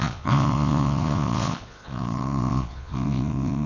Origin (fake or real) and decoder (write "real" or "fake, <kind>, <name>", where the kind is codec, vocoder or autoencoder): fake, vocoder, Vocos